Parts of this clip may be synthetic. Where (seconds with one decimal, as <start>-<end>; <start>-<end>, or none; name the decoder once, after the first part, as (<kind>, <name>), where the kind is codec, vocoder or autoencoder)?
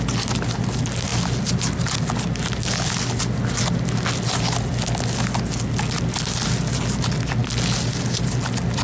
none